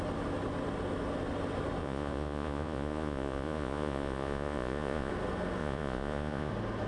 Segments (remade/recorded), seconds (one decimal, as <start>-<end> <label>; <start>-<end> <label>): 0.0-1.8 recorded; 1.8-5.1 remade; 5.1-5.6 recorded; 5.6-6.5 remade; 6.5-6.9 recorded